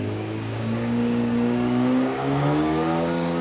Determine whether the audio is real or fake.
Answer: fake